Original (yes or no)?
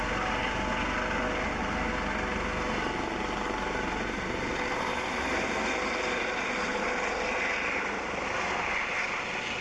yes